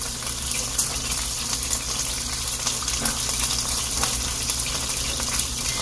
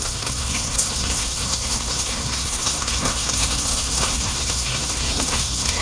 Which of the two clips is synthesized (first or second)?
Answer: second